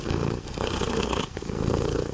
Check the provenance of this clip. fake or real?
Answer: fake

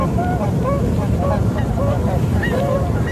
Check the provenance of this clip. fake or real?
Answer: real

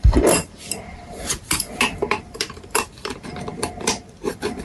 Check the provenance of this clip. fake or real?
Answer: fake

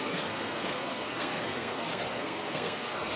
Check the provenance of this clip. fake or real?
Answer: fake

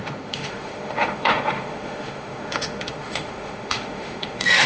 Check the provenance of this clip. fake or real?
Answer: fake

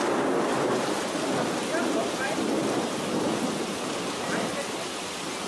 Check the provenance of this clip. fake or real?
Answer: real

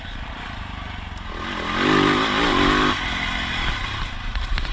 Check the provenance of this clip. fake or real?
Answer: real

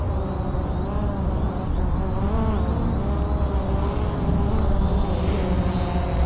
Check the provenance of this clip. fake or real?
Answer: real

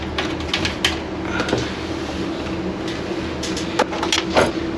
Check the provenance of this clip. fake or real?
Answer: real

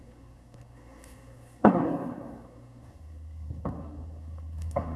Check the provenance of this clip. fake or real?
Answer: fake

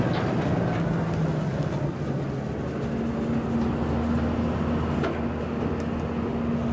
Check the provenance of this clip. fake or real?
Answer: real